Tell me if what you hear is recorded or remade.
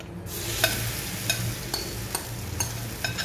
recorded